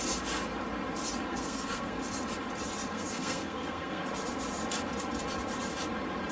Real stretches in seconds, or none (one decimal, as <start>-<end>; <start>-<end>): 0.0-1.3; 2.0-2.9; 4.0-6.3